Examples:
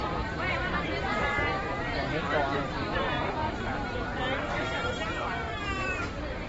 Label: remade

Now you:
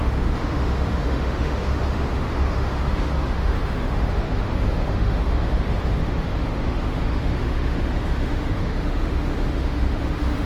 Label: remade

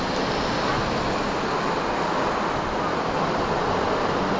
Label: recorded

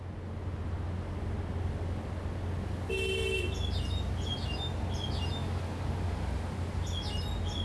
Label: recorded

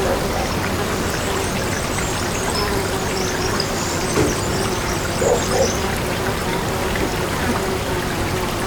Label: recorded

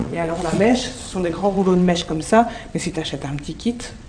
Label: remade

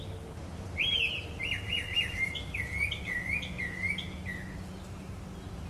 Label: recorded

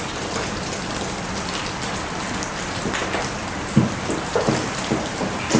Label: recorded